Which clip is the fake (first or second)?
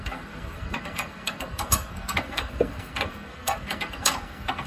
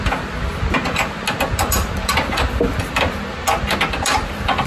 first